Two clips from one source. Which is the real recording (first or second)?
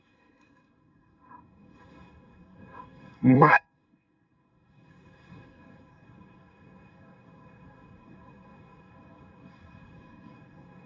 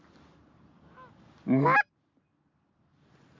second